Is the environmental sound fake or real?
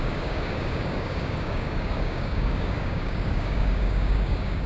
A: fake